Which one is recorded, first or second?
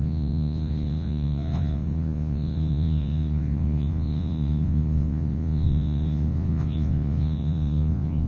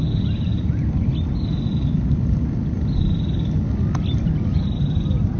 second